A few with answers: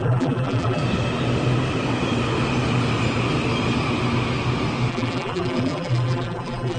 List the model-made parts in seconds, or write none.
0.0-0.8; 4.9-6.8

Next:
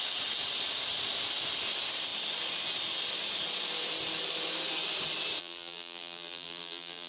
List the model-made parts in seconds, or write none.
5.4-7.1